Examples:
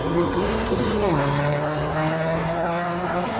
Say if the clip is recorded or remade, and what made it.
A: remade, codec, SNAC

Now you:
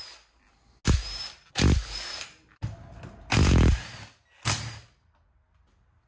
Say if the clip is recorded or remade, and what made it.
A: recorded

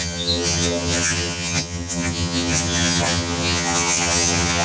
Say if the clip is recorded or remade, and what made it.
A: remade, vocoder, HiFi-GAN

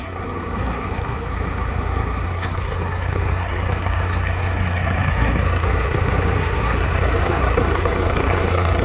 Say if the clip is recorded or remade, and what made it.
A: remade, codec, SNAC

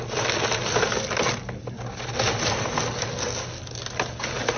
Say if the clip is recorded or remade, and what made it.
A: recorded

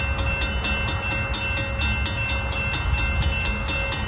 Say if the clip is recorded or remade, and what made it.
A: recorded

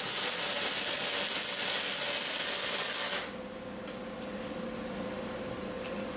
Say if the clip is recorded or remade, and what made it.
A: recorded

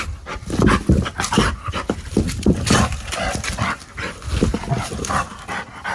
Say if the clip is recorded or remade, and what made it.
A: recorded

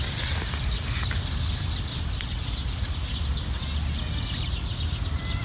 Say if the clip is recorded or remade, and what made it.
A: recorded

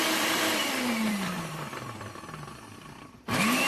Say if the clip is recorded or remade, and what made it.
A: remade, vocoder, BigVGAN v2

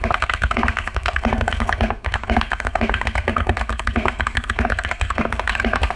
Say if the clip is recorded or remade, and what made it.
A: remade, codec, SNAC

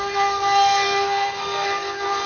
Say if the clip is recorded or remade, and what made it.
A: remade, codec, SNAC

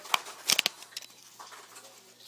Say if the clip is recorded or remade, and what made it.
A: recorded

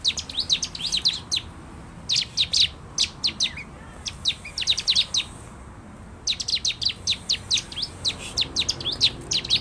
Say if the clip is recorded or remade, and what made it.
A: recorded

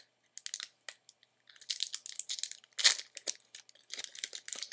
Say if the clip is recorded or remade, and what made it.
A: recorded